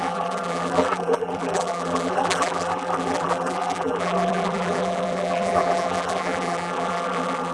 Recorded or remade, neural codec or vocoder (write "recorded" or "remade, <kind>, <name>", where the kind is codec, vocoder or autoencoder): remade, vocoder, BigVGAN v2